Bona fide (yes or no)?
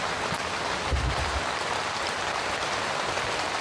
yes